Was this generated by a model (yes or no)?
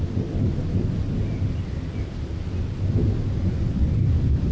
no